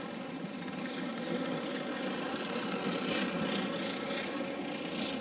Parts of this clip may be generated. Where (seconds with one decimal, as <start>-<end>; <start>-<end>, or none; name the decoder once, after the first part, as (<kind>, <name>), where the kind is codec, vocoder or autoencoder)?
none